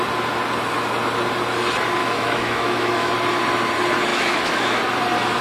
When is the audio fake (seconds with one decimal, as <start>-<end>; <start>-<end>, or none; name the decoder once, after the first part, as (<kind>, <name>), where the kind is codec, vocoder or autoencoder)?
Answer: 2.0-3.1 (autoencoder, DAC-VAE); 4.1-4.8